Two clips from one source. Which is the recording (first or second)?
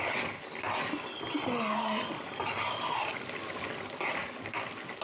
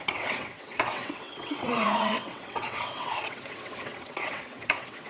first